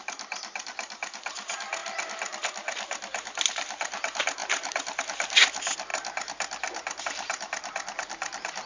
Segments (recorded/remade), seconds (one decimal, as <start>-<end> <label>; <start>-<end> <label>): 0.0-8.7 recorded